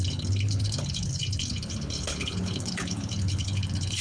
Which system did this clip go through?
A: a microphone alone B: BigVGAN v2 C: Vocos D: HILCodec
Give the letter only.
D